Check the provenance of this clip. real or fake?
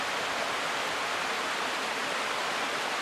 real